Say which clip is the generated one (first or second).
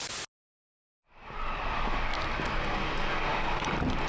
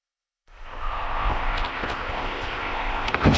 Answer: second